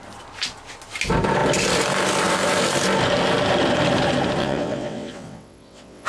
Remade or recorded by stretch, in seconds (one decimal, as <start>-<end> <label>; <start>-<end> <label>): 0.0-4.4 recorded; 4.4-6.1 remade